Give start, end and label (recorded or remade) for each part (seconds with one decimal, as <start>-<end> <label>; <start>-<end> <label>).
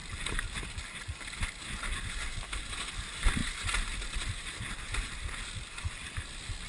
0.0-6.7 recorded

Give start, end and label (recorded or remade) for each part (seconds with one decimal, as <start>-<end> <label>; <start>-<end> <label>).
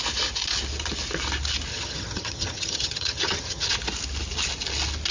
0.0-1.7 recorded; 1.7-3.7 remade; 3.7-5.1 recorded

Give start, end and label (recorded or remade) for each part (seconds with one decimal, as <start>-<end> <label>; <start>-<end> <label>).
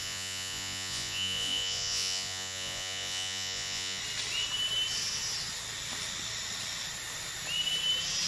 0.0-4.0 remade; 4.0-8.3 recorded